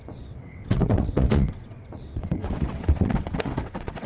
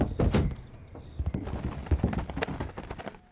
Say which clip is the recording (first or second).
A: second